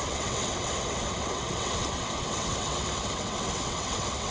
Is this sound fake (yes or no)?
yes